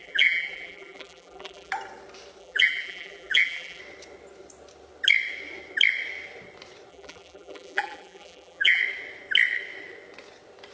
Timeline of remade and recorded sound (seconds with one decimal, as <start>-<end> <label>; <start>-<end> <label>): 0.0-1.7 remade; 1.7-2.4 recorded; 2.4-3.8 remade; 3.8-6.9 recorded; 6.9-8.8 remade; 8.8-10.7 recorded